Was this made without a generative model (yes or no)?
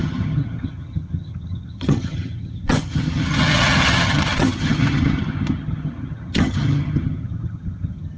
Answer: no